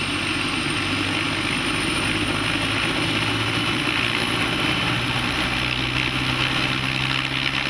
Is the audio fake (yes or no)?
no